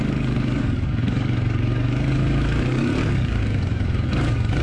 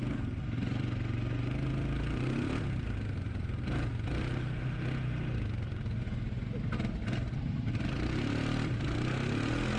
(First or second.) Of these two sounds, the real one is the second